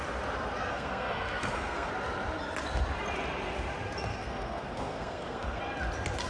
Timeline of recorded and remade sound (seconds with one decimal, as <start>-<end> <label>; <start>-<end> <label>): 0.0-0.7 recorded; 0.7-1.9 remade; 1.9-4.1 recorded; 4.1-5.6 remade; 5.6-6.3 recorded